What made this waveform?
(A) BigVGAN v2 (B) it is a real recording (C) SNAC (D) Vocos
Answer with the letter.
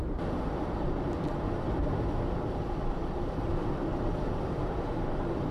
A